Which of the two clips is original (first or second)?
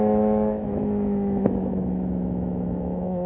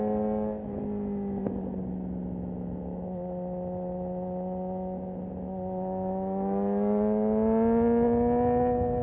second